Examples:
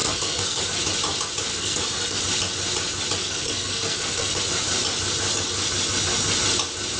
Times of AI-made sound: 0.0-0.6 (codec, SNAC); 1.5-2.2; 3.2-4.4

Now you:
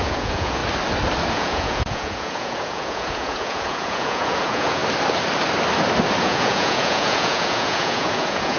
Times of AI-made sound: 0.0-0.6 (vocoder, Vocos); 1.3-4.8; 6.2-8.6

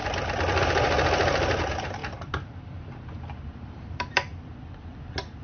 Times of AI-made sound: 0.6-4.3 (vocoder, BigVGAN v2)

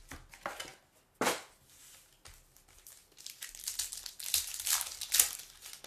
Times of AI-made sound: none